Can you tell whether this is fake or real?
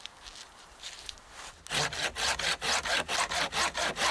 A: real